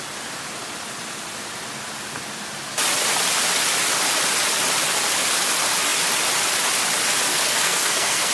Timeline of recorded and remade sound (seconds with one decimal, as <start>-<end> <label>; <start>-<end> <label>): 0.0-7.3 recorded; 7.3-8.3 remade